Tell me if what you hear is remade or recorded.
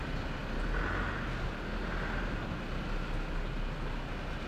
recorded